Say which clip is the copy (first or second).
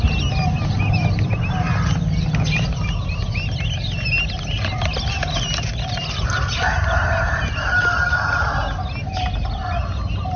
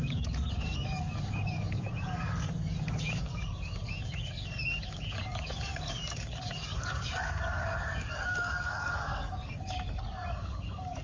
second